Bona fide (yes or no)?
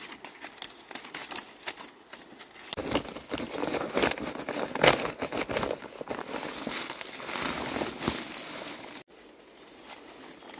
yes